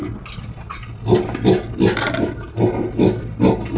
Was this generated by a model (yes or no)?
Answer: no